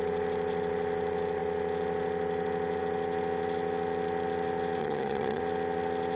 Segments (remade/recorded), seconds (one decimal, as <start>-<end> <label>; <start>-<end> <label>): 0.0-4.8 recorded; 4.8-5.4 remade; 5.4-6.2 recorded